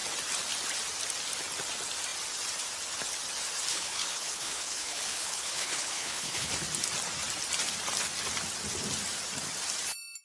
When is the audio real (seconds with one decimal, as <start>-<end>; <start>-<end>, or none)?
0.0-3.7; 6.5-10.2